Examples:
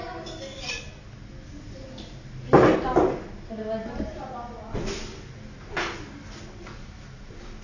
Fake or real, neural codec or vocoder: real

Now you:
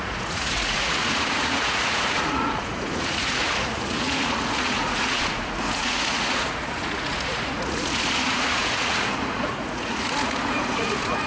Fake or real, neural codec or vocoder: fake, vocoder, Vocos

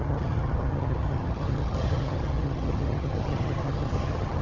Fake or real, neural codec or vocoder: fake, vocoder, HiFi-GAN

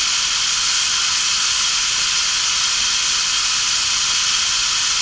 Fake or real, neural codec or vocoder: real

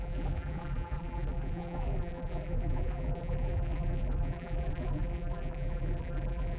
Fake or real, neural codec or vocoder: fake, vocoder, BigVGAN v2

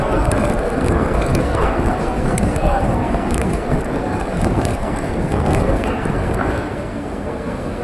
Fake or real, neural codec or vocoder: fake, codec, SNAC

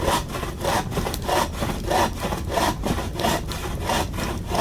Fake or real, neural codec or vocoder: real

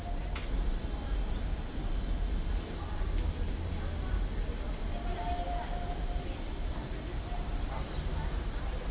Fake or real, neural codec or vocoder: real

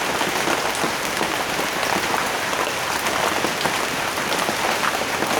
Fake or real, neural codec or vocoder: real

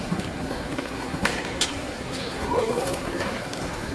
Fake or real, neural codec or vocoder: fake, codec, SNAC